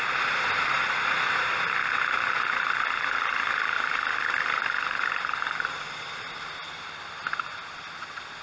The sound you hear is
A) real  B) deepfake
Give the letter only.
A